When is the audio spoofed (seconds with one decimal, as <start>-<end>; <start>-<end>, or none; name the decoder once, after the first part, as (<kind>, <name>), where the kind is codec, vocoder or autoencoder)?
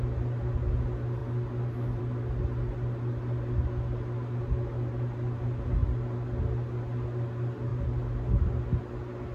none